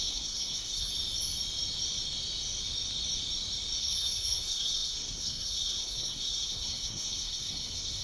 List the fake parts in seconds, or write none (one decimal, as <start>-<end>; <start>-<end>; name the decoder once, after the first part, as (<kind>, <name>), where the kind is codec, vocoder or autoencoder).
0.0-0.9 (codec, SNAC); 3.8-8.0